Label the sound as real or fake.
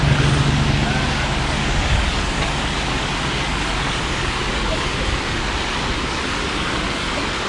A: fake